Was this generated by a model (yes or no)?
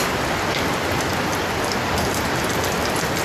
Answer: no